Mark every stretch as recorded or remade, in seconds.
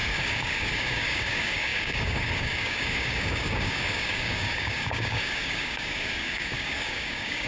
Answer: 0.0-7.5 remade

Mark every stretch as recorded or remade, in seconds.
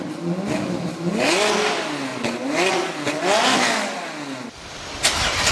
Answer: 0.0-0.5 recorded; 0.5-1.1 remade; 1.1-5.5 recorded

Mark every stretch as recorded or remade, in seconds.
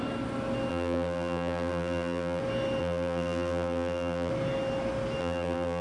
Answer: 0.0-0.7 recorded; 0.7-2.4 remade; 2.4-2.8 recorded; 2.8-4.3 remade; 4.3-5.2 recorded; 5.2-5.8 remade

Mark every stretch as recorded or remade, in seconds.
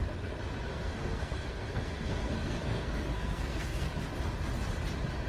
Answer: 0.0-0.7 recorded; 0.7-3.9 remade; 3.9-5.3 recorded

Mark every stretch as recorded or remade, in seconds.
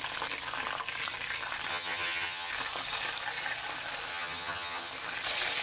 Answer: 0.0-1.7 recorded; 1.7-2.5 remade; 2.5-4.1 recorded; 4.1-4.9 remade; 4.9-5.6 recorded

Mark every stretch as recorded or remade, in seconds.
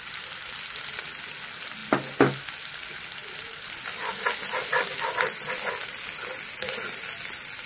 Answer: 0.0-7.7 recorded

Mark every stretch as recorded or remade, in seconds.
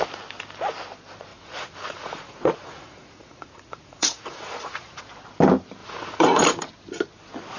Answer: 0.0-1.3 recorded; 1.3-5.0 remade; 5.0-5.8 recorded; 5.8-6.4 remade; 6.4-7.6 recorded